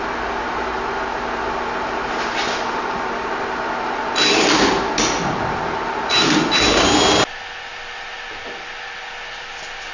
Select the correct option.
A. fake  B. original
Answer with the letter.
B